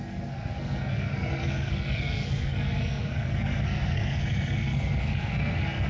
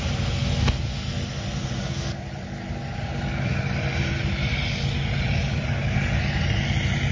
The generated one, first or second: first